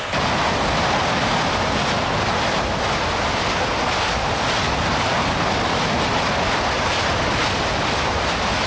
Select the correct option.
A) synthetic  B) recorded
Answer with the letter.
B